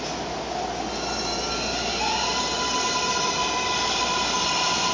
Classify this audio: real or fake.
real